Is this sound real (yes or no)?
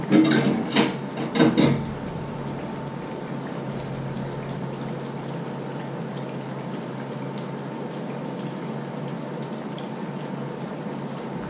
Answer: yes